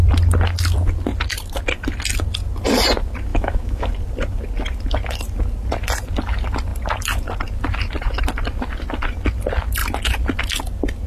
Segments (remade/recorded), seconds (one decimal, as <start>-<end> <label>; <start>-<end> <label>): 0.0-3.3 recorded; 3.3-3.9 remade; 3.9-11.1 recorded